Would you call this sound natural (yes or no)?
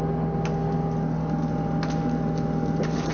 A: yes